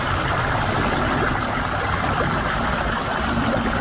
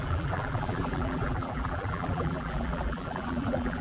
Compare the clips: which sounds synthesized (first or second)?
second